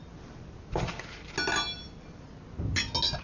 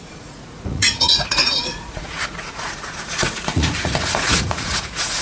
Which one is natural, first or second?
first